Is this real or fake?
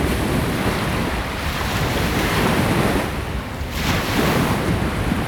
real